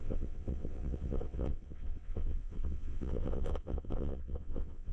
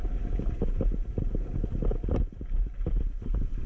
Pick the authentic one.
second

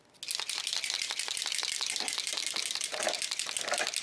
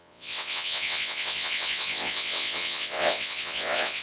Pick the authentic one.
first